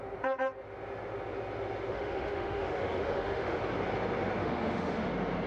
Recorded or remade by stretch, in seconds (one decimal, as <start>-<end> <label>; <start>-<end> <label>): 0.0-1.9 recorded; 1.9-3.6 remade; 3.6-4.4 recorded; 4.4-5.1 remade; 5.1-5.5 recorded